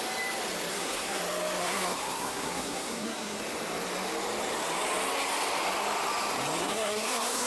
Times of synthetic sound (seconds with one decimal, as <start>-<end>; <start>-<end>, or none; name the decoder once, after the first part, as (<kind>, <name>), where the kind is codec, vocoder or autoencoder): 0.7-1.2 (codec, SNAC); 1.6-3.4; 6.6-7.5